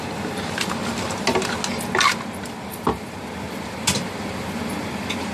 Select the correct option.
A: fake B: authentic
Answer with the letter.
B